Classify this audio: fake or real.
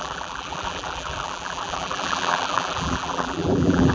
fake